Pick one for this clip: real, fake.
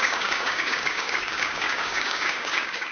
fake